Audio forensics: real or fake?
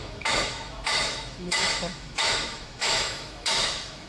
fake